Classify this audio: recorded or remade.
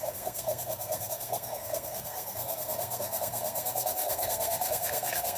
remade